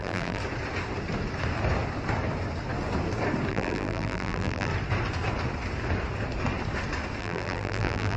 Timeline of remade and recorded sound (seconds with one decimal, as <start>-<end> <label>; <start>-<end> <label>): 0.0-0.4 remade; 0.4-3.5 recorded; 3.5-4.7 remade; 4.7-7.2 recorded; 7.2-8.2 remade